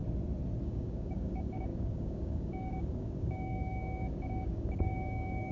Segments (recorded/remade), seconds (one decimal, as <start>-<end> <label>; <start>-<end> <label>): 0.0-0.6 recorded; 0.6-5.5 remade